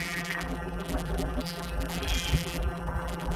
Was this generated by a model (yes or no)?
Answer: yes